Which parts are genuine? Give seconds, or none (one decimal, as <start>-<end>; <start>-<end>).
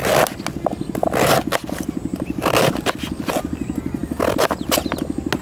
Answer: 0.0-5.4